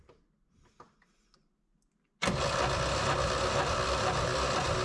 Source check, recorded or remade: recorded